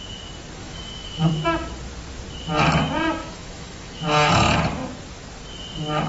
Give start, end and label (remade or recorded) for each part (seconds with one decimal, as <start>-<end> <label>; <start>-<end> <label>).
0.0-0.6 recorded; 0.6-1.3 remade; 1.3-3.2 recorded; 3.2-4.0 remade; 4.0-6.1 recorded